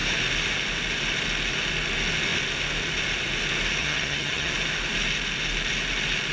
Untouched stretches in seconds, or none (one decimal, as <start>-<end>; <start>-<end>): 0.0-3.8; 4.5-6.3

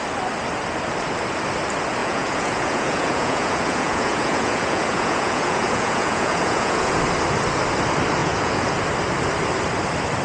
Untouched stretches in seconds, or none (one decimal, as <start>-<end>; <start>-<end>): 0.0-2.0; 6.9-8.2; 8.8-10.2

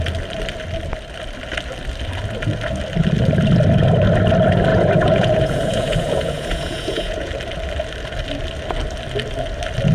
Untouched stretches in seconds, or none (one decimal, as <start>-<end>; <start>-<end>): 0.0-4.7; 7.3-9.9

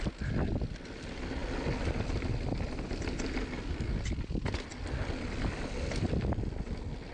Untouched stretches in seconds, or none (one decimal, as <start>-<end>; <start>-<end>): 0.0-7.1